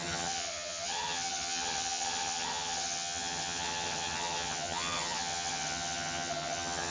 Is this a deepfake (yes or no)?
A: yes